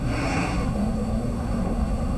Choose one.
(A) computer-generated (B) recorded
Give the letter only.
A